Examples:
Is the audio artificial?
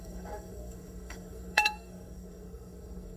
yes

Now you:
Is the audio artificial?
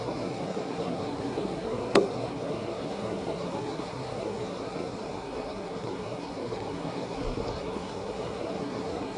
yes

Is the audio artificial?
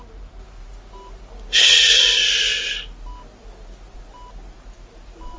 no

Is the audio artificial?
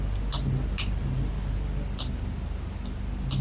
no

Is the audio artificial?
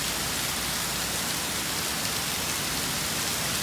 no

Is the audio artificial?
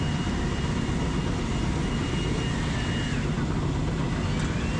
no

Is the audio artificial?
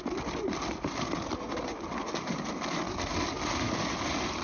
no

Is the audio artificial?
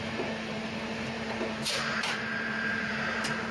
yes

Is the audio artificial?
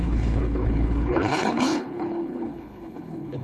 yes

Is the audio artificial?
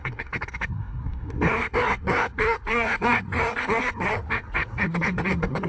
yes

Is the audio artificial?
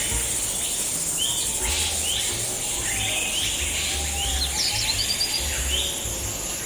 no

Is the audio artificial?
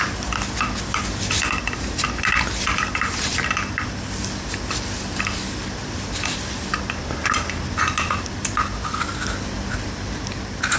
no